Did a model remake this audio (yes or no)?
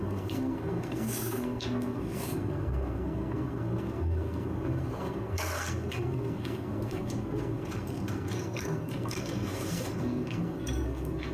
yes